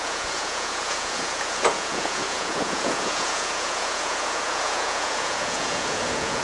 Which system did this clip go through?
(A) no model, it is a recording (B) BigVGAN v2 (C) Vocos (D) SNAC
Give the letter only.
C